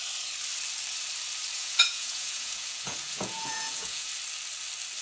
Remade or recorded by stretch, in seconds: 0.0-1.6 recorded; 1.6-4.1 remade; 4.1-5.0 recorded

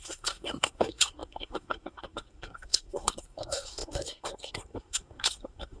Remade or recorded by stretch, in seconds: 0.0-5.8 remade

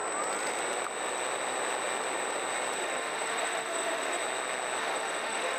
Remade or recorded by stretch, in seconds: 0.0-2.8 recorded; 2.8-4.2 remade; 4.2-4.8 recorded; 4.8-5.6 remade

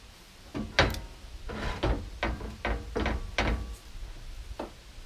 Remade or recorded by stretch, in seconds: 0.0-5.1 recorded

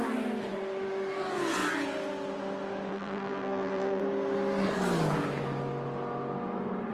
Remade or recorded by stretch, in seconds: 0.0-2.9 recorded; 2.9-4.0 remade; 4.0-6.9 recorded

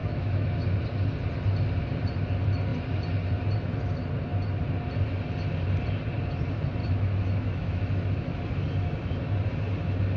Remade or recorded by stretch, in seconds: 0.0-0.5 remade; 0.5-6.8 recorded; 6.8-8.4 remade; 8.4-10.2 recorded

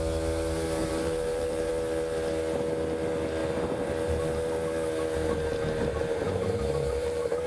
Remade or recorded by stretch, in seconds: 0.0-0.8 recorded; 0.8-1.7 remade; 1.7-3.4 recorded; 3.4-4.2 remade; 4.2-5.9 recorded; 5.9-7.5 remade